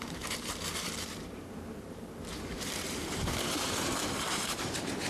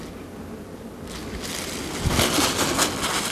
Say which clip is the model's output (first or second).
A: first